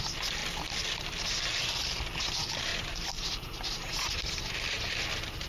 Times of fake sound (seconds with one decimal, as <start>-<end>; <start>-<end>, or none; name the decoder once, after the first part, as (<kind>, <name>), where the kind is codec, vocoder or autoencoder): 2.7-4.2 (vocoder, BigVGAN v2)